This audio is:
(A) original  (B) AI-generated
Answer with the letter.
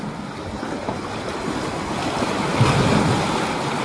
A